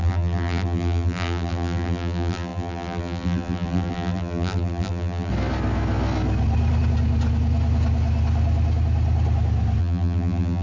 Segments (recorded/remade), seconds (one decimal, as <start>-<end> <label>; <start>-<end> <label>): 0.0-5.3 remade; 5.3-9.8 recorded; 9.8-10.6 remade